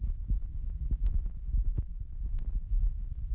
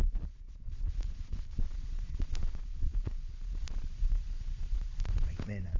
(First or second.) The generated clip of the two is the second